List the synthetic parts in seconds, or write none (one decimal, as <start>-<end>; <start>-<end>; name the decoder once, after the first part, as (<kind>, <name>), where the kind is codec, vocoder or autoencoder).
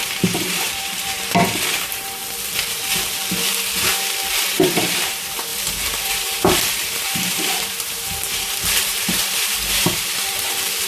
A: 0.0-2.2 (vocoder, BigVGAN v2); 4.3-10.9